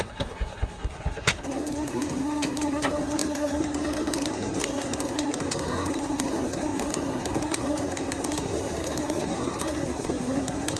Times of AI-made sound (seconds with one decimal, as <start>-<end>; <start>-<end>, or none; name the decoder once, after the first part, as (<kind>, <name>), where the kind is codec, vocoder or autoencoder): 0.0-10.8 (codec, SNAC)